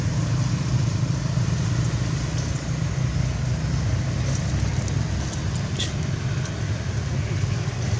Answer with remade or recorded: recorded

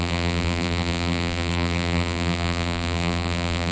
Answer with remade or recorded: remade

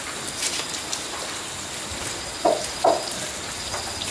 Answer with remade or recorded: recorded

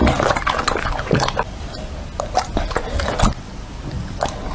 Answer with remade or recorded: recorded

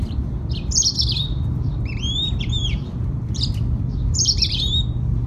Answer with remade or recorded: remade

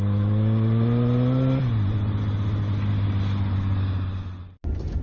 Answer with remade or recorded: recorded